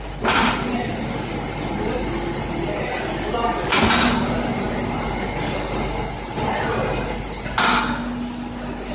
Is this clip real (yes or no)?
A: yes